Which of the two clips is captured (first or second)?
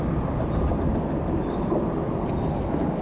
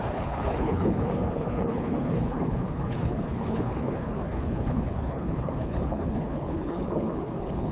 first